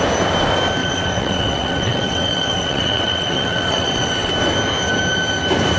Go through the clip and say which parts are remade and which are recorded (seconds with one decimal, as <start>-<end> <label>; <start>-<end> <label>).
0.0-0.8 recorded; 0.8-4.3 remade; 4.3-5.8 recorded